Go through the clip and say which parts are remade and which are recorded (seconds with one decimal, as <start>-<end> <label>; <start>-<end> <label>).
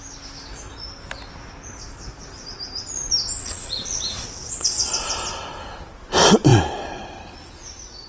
0.0-3.4 recorded; 3.4-4.9 remade; 4.9-8.1 recorded